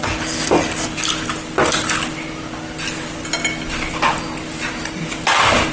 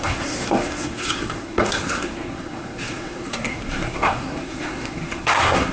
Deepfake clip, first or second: second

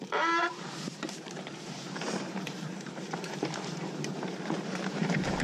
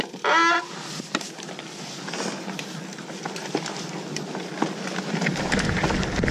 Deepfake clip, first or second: first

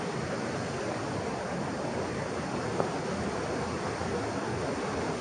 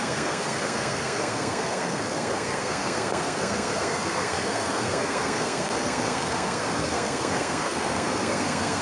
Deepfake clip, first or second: second